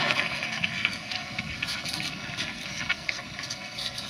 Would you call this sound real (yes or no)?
no